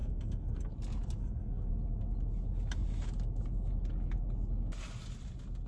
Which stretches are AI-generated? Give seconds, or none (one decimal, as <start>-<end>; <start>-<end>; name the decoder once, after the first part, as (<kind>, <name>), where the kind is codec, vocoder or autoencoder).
0.0-0.7 (codec, SNAC); 1.2-1.7